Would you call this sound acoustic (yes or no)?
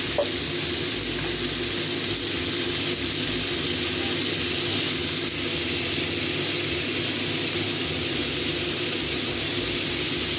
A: yes